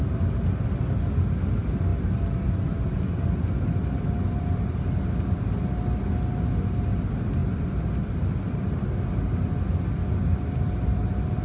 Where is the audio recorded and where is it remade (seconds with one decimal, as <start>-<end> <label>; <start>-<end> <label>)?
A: 0.0-7.4 recorded; 7.4-8.6 remade; 8.6-11.4 recorded